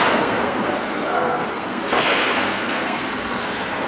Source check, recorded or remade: remade